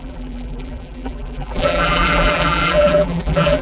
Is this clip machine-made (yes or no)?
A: yes